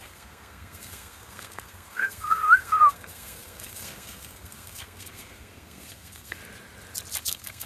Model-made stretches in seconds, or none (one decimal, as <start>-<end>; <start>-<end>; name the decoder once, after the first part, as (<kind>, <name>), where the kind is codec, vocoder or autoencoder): 0.0-6.4 (codec, SNAC); 7.2-7.7

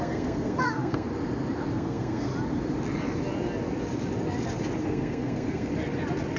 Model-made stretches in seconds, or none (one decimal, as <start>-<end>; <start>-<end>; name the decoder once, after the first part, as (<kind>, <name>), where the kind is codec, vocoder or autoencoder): 0.0-1.1 (codec, SNAC); 1.7-2.3; 4.8-5.7